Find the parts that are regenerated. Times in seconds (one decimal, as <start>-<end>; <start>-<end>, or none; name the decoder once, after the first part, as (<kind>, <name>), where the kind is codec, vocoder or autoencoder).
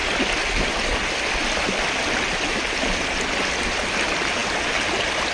none